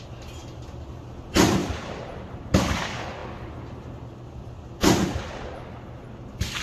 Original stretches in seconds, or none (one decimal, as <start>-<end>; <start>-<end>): 0.0-0.4; 1.0-1.6; 2.8-6.6